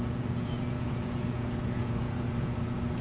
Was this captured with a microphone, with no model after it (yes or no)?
no